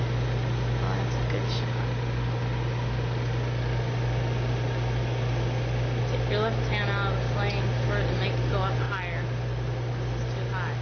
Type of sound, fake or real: real